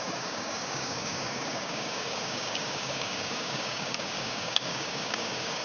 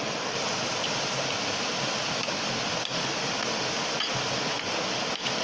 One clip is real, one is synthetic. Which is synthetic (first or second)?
first